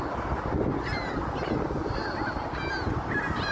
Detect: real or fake real